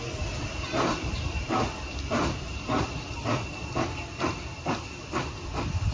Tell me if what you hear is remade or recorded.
remade